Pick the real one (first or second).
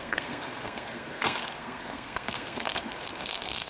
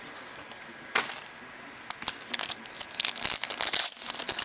second